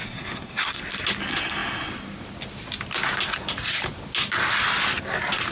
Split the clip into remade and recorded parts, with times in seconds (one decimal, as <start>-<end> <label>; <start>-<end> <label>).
0.0-0.8 remade; 0.8-5.5 recorded